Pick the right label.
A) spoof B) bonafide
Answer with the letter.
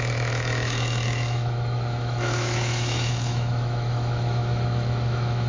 A